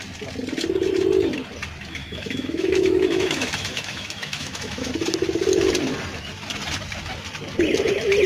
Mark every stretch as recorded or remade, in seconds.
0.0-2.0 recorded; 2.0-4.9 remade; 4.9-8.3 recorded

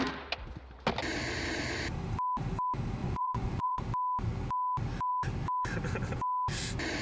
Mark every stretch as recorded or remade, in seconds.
0.0-3.0 recorded; 3.0-3.8 remade; 3.8-7.0 recorded

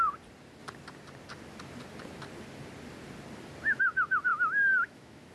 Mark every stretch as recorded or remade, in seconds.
0.0-4.3 recorded; 4.3-5.3 remade

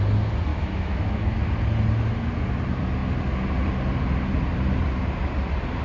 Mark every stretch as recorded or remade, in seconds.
0.0-0.5 recorded; 0.5-1.5 remade; 1.5-5.8 recorded